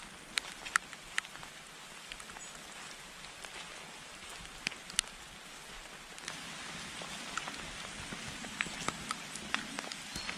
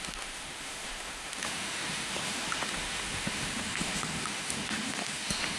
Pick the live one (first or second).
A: first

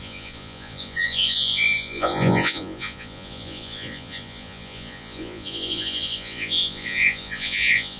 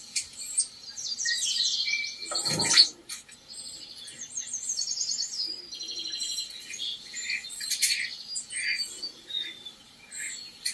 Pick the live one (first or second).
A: second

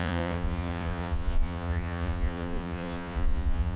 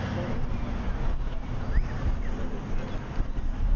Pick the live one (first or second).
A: second